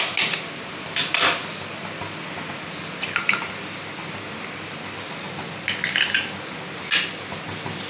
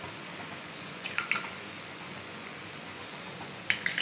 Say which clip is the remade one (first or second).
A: second